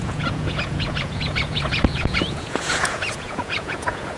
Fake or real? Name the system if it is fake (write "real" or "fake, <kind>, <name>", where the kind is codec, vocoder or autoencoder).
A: fake, vocoder, Vocos